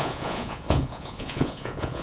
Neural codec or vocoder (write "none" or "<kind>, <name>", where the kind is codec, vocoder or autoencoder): vocoder, Vocos